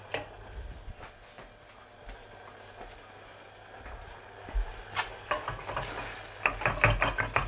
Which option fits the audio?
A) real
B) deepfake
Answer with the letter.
A